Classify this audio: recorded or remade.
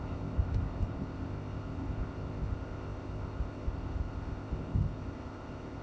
remade